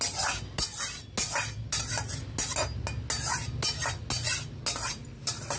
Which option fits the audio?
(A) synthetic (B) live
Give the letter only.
B